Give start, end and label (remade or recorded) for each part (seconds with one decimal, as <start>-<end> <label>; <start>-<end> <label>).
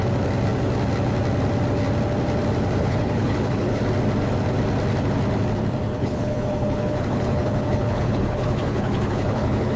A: 0.0-2.8 recorded; 2.8-3.8 remade; 3.8-5.9 recorded; 5.9-9.8 remade